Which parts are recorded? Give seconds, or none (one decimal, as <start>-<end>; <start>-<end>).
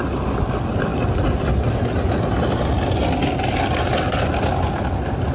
0.0-5.3